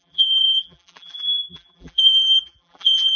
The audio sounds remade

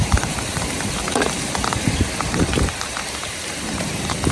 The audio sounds remade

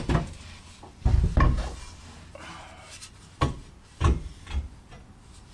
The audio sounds recorded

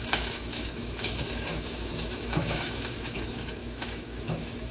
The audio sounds remade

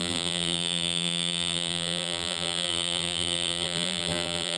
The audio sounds remade